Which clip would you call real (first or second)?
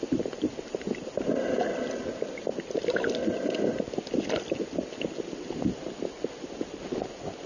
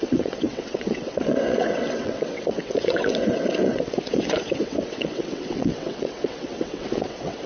first